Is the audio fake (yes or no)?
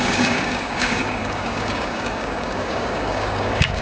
yes